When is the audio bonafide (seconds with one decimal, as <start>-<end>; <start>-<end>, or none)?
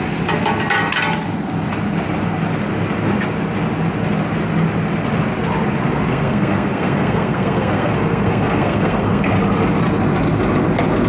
0.0-6.1; 9.3-11.1